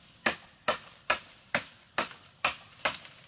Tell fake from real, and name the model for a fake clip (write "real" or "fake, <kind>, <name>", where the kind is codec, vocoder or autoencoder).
real